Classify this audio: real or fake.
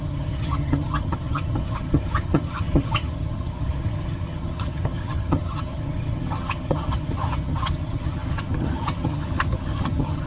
fake